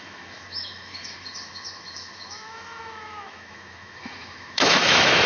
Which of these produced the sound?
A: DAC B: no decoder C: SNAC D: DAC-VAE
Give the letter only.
D